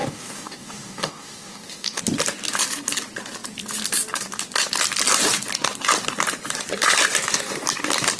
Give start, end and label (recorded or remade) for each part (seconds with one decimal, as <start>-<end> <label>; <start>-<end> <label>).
0.0-2.0 remade; 2.0-8.2 recorded